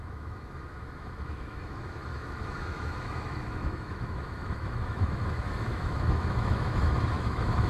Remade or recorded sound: remade